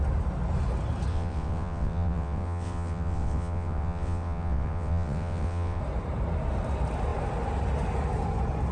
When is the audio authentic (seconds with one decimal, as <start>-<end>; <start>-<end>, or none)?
0.0-1.1; 5.8-8.7